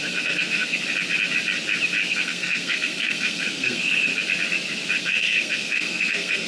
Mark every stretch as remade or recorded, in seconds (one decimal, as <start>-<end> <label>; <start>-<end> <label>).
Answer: 0.0-0.8 remade; 0.8-2.1 recorded; 2.1-4.1 remade; 4.1-5.0 recorded; 5.0-6.5 remade